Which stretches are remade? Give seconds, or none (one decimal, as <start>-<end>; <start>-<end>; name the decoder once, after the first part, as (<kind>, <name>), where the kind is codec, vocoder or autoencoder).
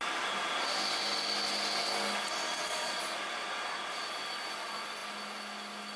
2.5-3.0 (vocoder, Vocos)